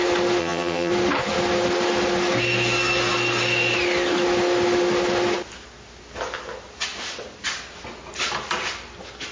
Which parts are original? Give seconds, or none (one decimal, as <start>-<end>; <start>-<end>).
0.0-0.4; 0.9-9.3

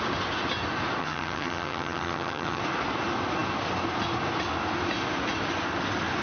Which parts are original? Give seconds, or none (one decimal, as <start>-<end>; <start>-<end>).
0.0-1.0; 2.6-6.2